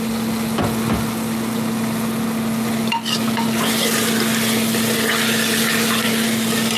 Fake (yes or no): no